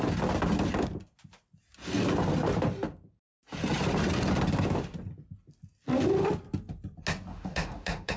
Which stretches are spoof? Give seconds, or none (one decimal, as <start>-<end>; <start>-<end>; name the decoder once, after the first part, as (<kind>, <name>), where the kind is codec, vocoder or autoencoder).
7.3-8.2 (autoencoder, DAC-VAE)